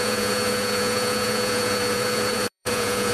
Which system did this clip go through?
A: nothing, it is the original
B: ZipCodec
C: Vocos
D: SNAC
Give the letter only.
C